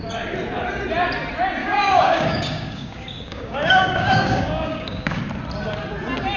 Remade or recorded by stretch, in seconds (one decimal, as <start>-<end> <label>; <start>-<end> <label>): 0.0-1.6 recorded; 1.6-5.2 remade; 5.2-6.4 recorded